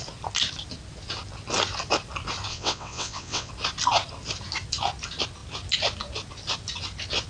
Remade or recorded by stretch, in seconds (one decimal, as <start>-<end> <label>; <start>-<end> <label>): 0.0-2.5 recorded; 2.5-3.5 remade; 3.5-7.3 recorded